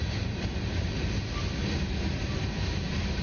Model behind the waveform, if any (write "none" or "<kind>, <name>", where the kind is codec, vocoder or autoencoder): none